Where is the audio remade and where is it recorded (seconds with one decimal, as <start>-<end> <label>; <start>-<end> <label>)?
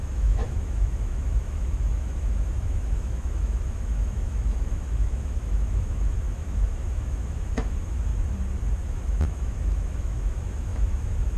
0.0-8.1 remade; 8.1-8.9 recorded; 8.9-11.4 remade